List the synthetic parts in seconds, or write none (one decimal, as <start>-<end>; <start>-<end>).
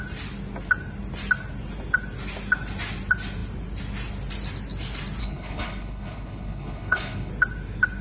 5.2-7.3